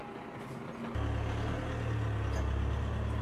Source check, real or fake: real